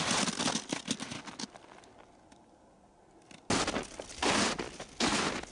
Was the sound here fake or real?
real